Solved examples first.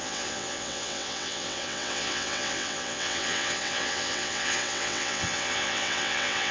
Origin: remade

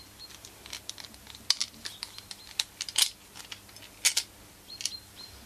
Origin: recorded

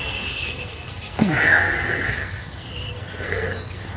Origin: remade